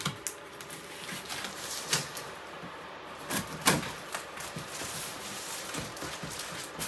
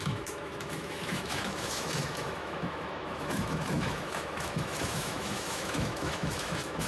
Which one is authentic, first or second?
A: first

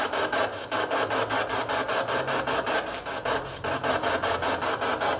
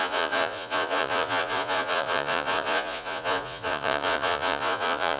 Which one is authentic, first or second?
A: first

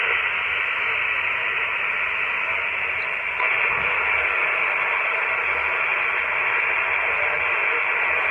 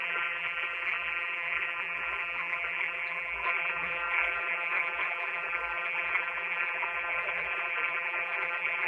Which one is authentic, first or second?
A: first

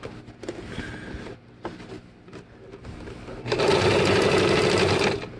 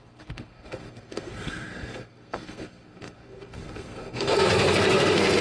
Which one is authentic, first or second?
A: first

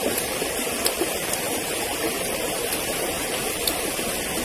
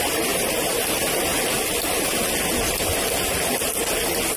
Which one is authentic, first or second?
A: second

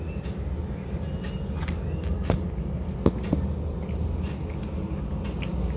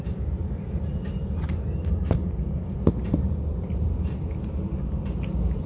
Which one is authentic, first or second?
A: first